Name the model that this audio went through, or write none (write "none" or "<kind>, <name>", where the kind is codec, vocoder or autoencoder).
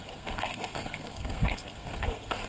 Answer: codec, SNAC